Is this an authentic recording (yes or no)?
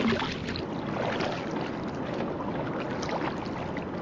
yes